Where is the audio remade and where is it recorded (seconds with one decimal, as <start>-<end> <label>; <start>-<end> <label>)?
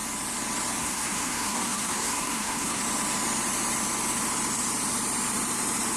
0.0-0.8 recorded; 0.8-2.8 remade; 2.8-6.0 recorded